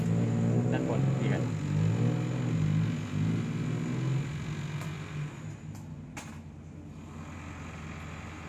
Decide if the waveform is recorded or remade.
recorded